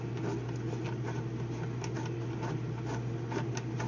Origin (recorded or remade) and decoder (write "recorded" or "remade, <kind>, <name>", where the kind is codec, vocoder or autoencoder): recorded